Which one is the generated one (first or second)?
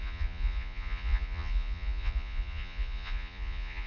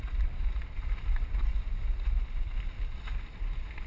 first